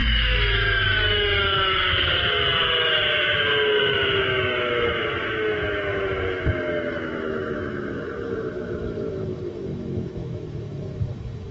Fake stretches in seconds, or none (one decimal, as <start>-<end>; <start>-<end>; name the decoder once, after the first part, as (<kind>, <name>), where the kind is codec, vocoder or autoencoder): 0.0-11.5 (autoencoder, DAC-VAE)